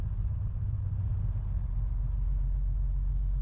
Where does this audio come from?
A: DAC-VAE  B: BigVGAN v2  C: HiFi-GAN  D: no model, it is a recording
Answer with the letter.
D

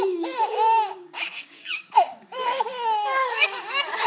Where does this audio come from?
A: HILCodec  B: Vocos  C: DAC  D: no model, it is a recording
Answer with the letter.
C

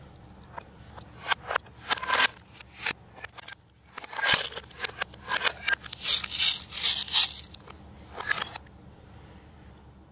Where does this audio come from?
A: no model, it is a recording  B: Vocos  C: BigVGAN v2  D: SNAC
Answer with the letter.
A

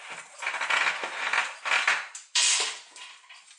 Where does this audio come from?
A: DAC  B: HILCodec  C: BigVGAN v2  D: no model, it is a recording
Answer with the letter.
D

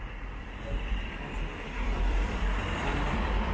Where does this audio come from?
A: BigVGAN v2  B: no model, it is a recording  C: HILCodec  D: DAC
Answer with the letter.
A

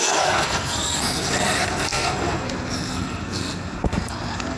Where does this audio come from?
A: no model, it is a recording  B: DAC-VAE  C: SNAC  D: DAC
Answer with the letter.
C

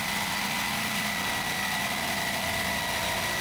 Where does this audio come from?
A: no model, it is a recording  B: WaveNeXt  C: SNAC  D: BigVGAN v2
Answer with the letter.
D